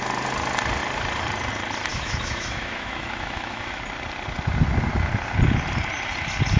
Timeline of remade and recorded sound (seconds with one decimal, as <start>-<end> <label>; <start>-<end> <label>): 0.0-1.9 recorded; 1.9-3.8 remade; 3.8-6.6 recorded